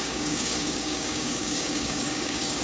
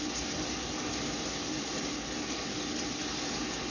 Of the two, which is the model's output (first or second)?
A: first